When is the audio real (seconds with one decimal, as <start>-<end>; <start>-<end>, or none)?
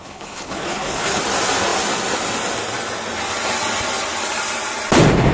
1.2-5.3